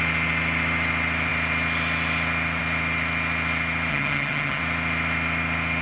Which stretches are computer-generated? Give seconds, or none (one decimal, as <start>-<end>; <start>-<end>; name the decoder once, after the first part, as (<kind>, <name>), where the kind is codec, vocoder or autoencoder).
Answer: 3.9-4.6 (vocoder, HiFi-GAN)